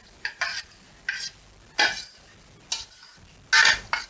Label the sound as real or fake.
real